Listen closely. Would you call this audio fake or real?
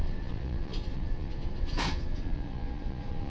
fake